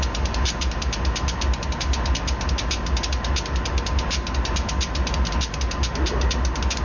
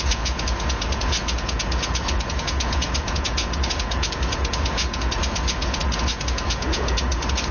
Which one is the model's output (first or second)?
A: second